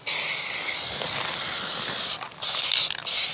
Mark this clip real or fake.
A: real